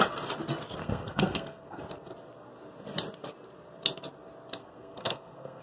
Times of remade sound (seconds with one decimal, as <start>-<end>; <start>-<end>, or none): 0.8-1.8; 4.6-5.6